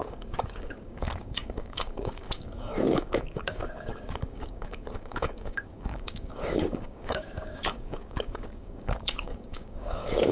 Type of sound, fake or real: fake